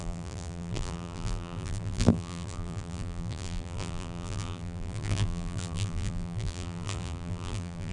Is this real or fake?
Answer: fake